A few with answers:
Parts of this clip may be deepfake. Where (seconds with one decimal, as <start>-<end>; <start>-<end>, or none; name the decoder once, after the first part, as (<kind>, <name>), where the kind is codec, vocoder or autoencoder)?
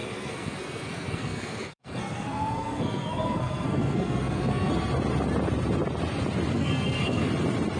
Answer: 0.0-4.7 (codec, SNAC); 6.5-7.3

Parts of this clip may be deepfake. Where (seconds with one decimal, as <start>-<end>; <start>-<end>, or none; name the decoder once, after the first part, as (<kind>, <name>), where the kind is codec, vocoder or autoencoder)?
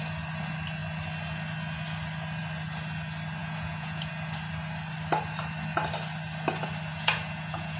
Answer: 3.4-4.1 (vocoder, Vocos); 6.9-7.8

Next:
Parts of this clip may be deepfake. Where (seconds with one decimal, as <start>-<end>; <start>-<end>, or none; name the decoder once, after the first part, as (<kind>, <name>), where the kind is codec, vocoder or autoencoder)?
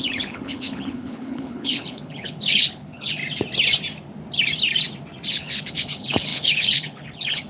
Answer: 0.0-3.2 (codec, HILCodec); 5.3-7.5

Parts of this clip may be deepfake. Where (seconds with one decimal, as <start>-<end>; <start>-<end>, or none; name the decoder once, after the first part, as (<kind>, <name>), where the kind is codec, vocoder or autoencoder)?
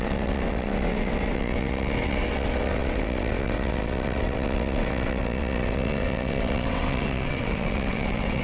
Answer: 0.0-8.4 (vocoder, WaveNeXt)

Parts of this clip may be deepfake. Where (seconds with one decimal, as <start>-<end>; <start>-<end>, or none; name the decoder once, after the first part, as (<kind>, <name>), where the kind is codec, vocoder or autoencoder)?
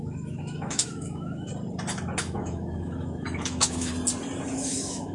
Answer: 0.0-1.5 (autoencoder, DAC-VAE); 2.2-3.9; 4.5-5.1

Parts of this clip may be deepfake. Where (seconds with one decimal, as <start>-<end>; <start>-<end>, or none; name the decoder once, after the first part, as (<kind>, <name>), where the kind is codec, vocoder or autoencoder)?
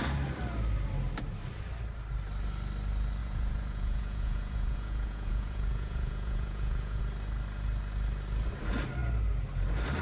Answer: 3.2-7.0 (vocoder, Vocos)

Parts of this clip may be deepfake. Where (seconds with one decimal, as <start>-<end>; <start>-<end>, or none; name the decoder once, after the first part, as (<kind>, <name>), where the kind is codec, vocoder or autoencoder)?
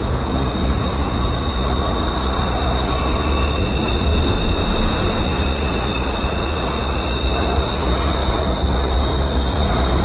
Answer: 0.0-4.1 (vocoder, Vocos); 5.2-10.0